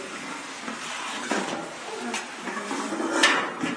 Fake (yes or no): no